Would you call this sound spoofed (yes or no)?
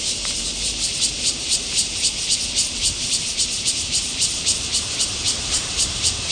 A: yes